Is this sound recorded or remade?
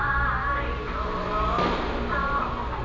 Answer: recorded